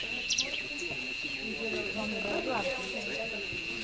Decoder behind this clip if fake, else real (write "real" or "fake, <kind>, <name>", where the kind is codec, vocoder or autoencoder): fake, vocoder, Vocos